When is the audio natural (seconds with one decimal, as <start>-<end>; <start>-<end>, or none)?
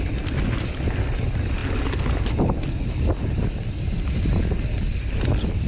0.0-5.7